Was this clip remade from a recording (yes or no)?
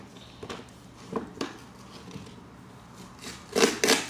no